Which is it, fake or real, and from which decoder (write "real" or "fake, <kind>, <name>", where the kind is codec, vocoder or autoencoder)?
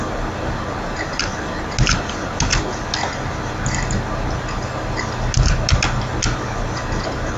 real